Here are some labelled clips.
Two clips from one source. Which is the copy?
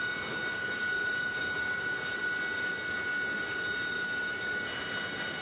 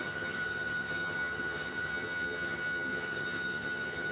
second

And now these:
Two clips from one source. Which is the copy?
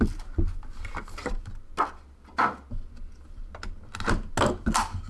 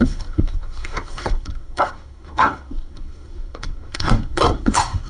second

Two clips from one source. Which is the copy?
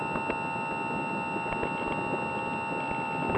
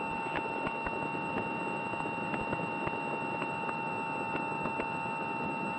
second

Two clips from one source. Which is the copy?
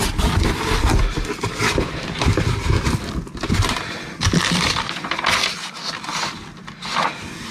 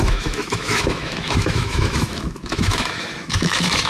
second